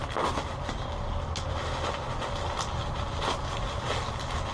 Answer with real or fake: real